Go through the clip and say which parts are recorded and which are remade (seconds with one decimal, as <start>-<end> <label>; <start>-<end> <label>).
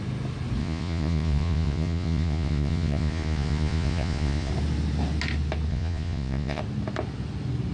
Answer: 0.0-0.6 recorded; 0.6-4.5 remade; 4.5-5.7 recorded; 5.7-6.6 remade; 6.6-7.7 recorded